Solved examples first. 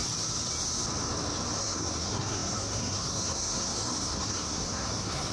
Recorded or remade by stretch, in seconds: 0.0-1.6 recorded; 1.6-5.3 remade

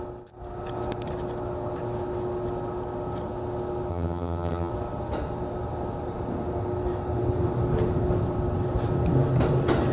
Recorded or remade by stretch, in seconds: 0.0-3.9 recorded; 3.9-4.7 remade; 4.7-9.9 recorded